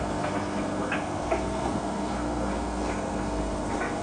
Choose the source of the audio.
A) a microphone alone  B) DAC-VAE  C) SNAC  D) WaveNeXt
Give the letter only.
C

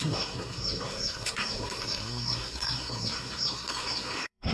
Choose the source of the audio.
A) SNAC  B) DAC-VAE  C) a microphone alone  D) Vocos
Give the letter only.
A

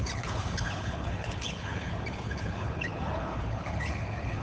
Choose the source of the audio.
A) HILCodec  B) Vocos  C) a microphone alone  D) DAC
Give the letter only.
A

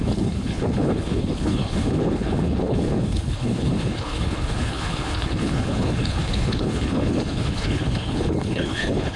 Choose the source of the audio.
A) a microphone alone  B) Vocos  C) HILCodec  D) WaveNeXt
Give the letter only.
C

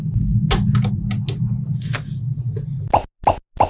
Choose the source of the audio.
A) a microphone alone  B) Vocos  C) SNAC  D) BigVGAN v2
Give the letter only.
A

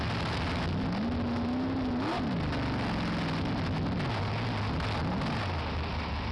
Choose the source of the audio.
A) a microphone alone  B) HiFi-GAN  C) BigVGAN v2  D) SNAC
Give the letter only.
A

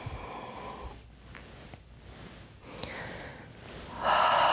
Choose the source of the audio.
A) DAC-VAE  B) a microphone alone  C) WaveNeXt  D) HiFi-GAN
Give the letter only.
B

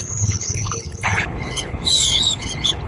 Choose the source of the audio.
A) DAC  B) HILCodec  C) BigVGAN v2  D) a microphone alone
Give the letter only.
B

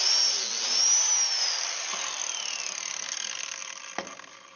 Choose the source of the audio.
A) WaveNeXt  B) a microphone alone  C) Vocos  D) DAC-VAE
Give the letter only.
B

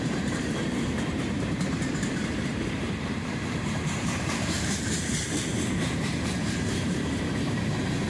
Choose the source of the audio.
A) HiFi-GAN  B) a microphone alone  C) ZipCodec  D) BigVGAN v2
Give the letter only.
D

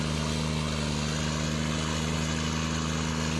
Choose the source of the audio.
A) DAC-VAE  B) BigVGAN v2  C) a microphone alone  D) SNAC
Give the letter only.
C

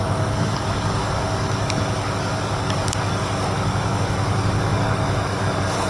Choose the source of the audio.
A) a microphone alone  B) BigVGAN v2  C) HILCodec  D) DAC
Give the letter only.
D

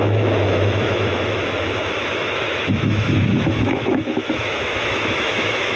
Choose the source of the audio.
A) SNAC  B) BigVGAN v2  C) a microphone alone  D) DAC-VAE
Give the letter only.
D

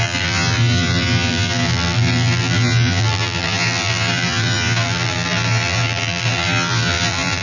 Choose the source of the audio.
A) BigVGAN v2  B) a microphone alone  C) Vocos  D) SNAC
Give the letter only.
A